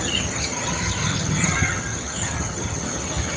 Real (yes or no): no